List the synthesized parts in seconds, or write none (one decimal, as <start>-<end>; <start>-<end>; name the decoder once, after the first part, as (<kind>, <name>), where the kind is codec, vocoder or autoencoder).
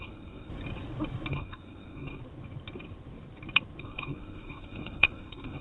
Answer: 0.0-0.5 (codec, SNAC); 1.3-2.2; 3.8-5.6